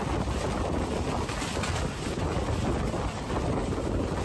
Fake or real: real